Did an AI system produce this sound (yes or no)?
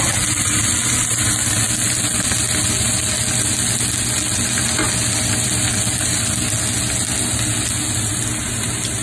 no